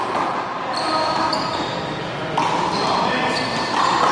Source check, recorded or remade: recorded